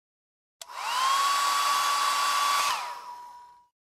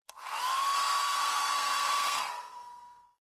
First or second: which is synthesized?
second